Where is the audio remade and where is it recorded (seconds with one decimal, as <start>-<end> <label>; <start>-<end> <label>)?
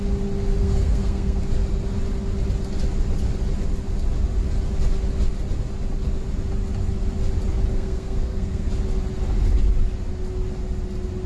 0.0-0.6 recorded; 0.6-1.4 remade; 1.4-7.7 recorded; 7.7-8.7 remade; 8.7-11.3 recorded